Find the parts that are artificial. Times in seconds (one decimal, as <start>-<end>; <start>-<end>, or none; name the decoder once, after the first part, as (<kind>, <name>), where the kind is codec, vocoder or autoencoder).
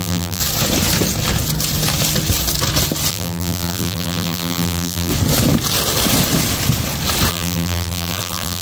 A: 0.0-0.4 (vocoder, BigVGAN v2); 3.1-5.1; 7.3-8.6